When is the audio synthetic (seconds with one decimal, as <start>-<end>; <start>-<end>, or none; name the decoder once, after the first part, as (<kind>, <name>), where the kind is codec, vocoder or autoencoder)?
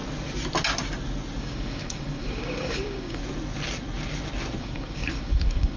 1.4-3.2 (codec, DAC); 4.6-5.8